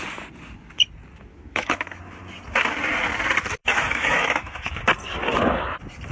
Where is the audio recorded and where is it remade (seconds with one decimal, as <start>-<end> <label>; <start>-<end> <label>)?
0.0-1.3 recorded; 1.3-2.0 remade; 2.0-3.6 recorded; 3.6-4.8 remade; 4.8-6.1 recorded